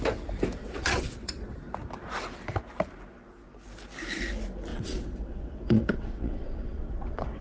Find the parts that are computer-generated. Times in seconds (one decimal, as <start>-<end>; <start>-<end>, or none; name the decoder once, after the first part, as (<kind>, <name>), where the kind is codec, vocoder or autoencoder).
0.6-1.6 (vocoder, WaveNeXt); 4.7-7.4